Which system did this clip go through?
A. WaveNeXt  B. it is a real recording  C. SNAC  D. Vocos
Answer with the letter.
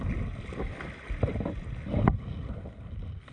B